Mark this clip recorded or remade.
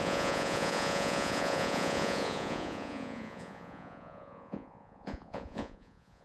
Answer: remade